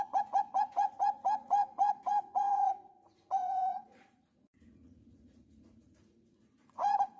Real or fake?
fake